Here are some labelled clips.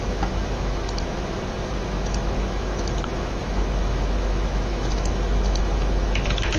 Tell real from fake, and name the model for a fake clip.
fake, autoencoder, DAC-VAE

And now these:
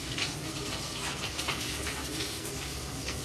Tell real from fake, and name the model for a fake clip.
fake, codec, SNAC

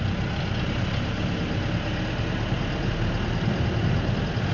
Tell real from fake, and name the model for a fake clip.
real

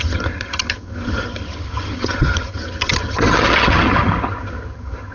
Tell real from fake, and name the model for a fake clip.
fake, vocoder, HiFi-GAN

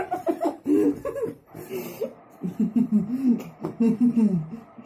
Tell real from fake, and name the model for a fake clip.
fake, vocoder, BigVGAN v2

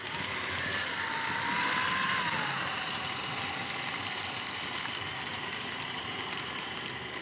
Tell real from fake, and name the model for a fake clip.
real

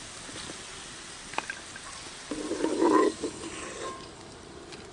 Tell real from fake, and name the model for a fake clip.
real